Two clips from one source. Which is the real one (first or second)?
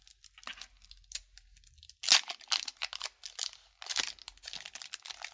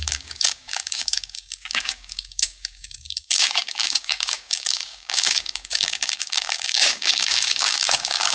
first